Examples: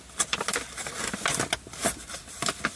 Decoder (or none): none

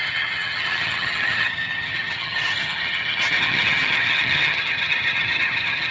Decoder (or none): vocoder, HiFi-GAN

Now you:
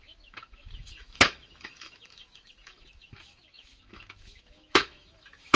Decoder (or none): autoencoder, DAC-VAE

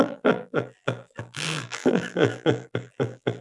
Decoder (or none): vocoder, BigVGAN v2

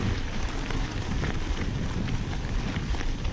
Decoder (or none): none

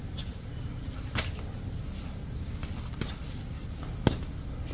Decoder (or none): none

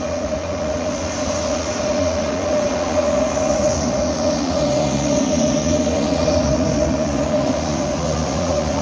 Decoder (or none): vocoder, Vocos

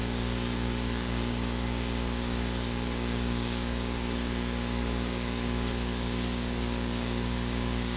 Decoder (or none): codec, DAC